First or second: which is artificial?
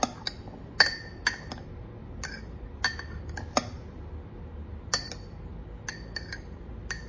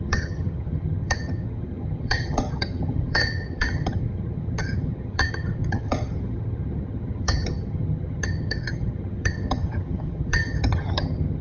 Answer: second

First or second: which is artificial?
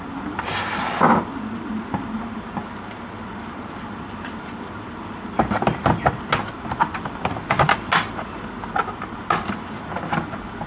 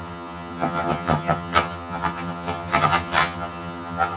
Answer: second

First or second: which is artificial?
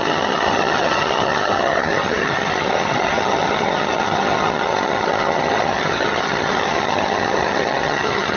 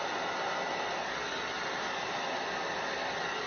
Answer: first